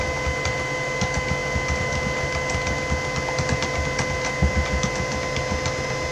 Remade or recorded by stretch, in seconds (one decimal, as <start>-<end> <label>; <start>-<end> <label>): 0.0-6.1 recorded